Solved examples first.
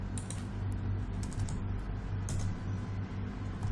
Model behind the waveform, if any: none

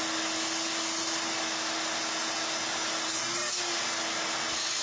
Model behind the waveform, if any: none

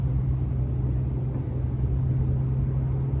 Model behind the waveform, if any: none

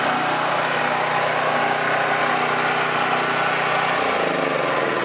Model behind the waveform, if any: none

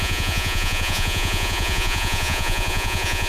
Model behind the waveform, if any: vocoder, Vocos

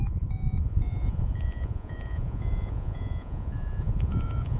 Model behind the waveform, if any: vocoder, Vocos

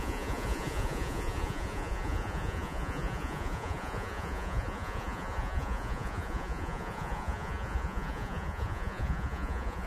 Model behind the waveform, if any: vocoder, Vocos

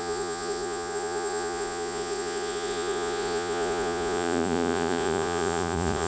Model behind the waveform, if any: vocoder, Vocos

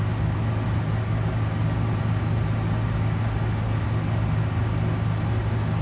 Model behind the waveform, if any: none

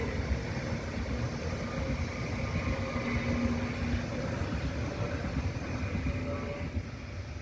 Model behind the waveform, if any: none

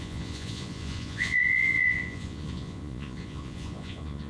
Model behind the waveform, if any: vocoder, Vocos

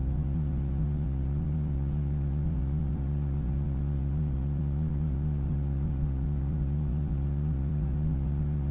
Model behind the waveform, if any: vocoder, Vocos